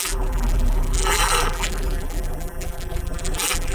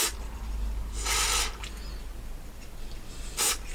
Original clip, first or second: second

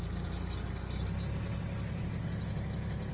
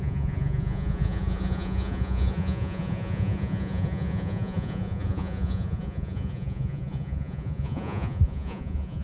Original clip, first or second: first